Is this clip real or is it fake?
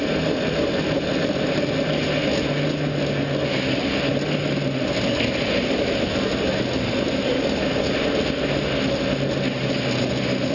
real